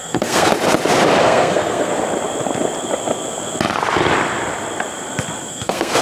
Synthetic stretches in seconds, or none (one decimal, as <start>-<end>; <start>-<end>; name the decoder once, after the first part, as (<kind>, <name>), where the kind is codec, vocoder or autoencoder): 0.0-0.5 (codec, SNAC); 1.2-1.9; 5.5-6.0